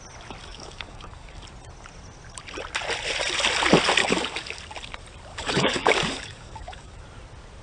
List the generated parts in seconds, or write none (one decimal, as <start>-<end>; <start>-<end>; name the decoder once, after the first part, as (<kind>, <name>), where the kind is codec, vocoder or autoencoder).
0.4-1.4 (codec, DAC); 4.0-4.6; 5.3-7.0